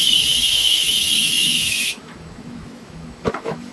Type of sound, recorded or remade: remade